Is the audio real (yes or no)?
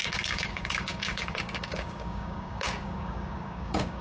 no